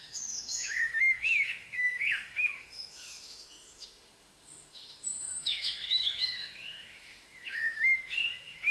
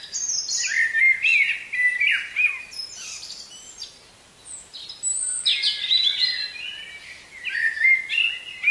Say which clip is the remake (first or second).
first